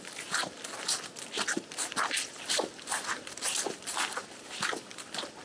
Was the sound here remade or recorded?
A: recorded